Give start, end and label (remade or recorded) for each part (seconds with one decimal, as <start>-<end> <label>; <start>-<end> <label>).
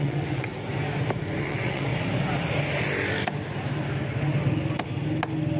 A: 0.0-0.5 remade; 0.5-1.4 recorded; 1.4-1.9 remade; 1.9-5.6 recorded